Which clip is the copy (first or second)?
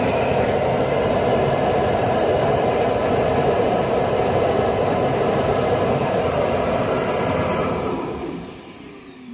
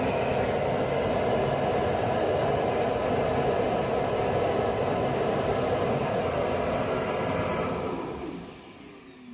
first